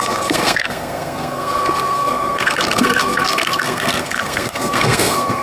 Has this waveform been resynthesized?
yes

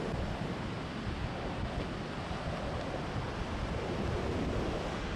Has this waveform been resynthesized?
no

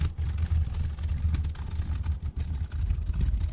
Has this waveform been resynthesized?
no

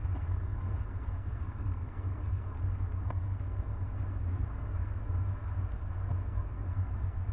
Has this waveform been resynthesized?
yes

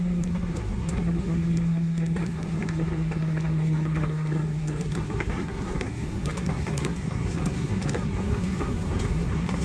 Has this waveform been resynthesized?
yes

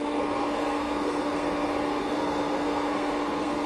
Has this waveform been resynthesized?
yes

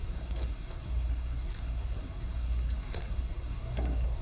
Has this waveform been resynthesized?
yes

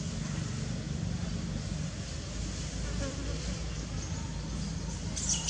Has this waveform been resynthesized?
no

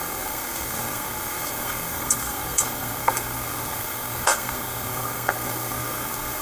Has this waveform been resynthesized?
yes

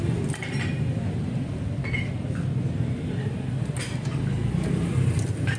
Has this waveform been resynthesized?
no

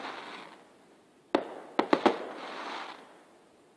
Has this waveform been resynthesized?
no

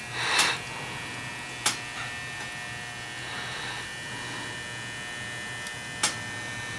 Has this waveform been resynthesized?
no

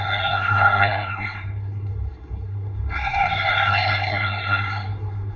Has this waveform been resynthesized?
yes